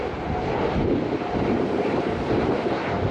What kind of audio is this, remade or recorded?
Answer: remade